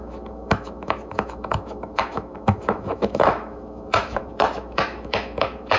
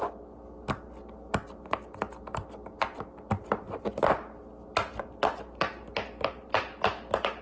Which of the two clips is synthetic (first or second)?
first